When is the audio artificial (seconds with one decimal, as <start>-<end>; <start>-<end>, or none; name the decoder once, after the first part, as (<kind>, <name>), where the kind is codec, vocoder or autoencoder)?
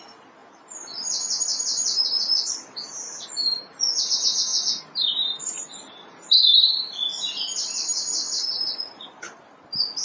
none